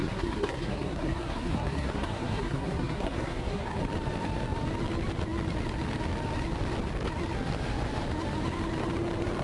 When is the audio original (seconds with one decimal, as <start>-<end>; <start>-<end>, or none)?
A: 3.8-9.4